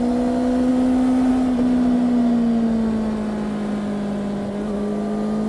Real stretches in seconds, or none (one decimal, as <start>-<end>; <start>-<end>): 0.0-5.5